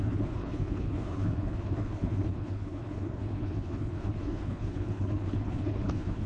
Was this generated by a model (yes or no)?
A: yes